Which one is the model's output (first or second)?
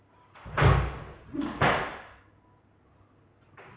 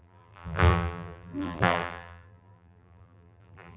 second